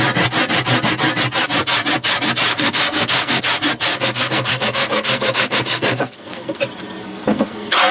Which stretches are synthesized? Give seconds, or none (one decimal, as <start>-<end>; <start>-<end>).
2.5-3.4; 3.9-6.6; 7.0-7.9